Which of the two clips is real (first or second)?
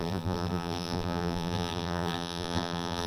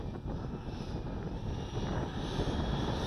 second